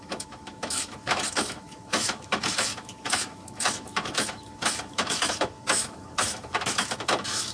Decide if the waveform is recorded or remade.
remade